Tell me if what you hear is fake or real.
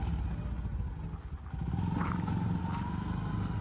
real